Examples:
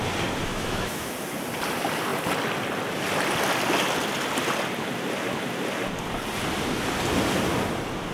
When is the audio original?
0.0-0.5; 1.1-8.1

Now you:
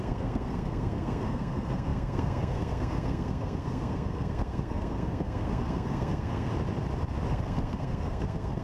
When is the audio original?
6.5-7.3

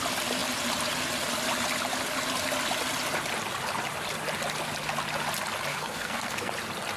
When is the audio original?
0.0-5.7; 6.5-7.0

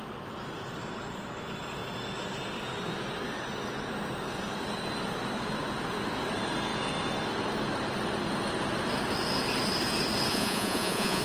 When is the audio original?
0.0-10.3